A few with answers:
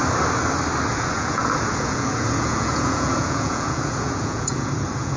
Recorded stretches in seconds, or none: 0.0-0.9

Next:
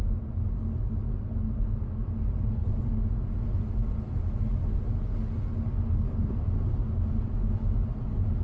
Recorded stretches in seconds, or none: 0.0-8.4

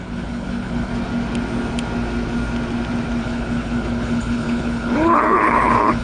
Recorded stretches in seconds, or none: 0.9-3.2